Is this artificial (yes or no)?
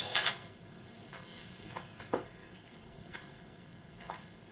yes